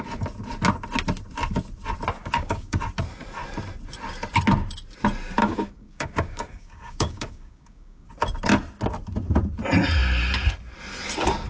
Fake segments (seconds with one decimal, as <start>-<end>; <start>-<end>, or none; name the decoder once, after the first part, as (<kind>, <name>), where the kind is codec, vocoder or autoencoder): 2.2-2.8 (codec, DAC); 5.4-8.1